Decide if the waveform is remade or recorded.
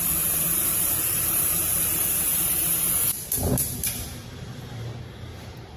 remade